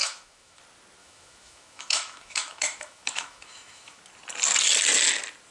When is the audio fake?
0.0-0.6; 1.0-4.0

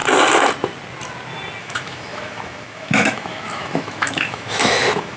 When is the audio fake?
1.6-5.2